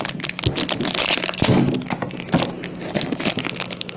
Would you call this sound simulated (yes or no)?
no